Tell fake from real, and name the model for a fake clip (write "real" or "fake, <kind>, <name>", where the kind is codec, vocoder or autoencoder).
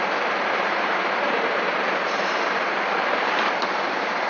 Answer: fake, vocoder, BigVGAN v2